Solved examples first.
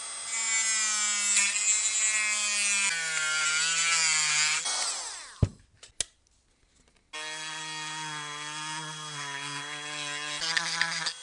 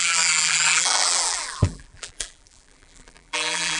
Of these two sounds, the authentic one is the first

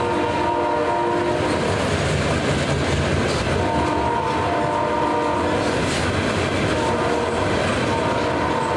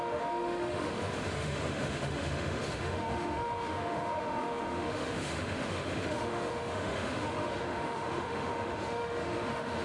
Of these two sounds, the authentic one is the first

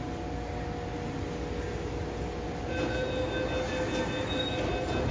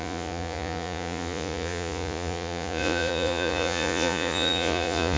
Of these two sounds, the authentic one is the first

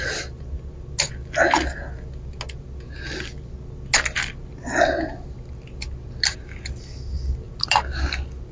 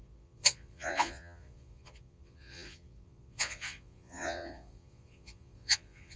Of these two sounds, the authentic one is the first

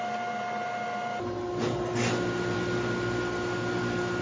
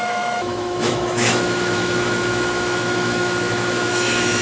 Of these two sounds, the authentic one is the first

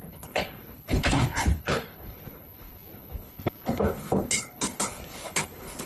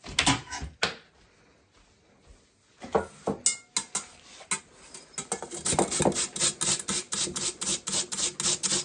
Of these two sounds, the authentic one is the second